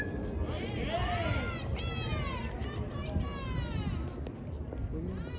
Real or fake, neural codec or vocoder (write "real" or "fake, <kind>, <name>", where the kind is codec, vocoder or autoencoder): real